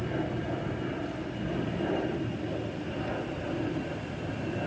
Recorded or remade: recorded